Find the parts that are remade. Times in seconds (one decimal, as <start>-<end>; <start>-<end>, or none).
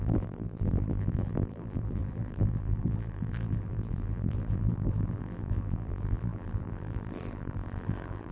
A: 0.0-8.3